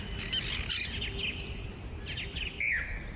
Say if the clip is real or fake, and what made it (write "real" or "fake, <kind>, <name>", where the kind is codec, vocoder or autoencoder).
real